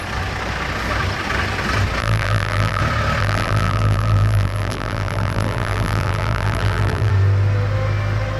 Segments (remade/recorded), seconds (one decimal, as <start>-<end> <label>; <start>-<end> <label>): 0.0-2.0 recorded; 2.0-2.8 remade; 2.8-3.2 recorded; 3.2-7.1 remade; 7.1-8.4 recorded